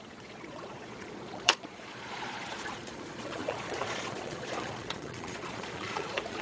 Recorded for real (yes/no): no